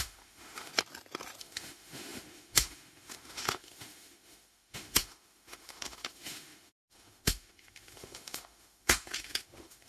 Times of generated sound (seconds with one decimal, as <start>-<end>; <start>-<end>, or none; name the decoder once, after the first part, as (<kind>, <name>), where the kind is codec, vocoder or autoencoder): 0.0-0.7 (autoencoder, DAC-VAE); 1.4-9.9